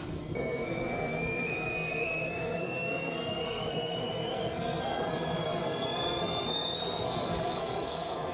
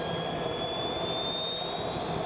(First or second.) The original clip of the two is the second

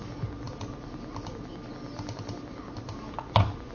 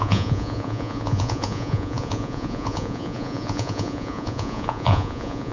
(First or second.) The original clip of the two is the first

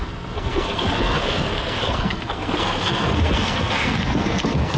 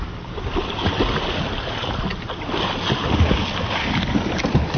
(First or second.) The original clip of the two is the second